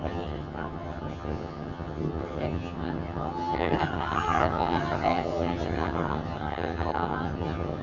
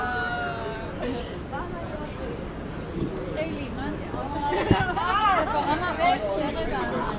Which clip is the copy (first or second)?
first